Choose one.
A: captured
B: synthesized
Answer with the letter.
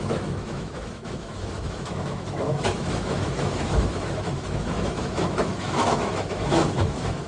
B